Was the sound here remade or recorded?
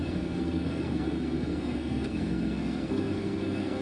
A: remade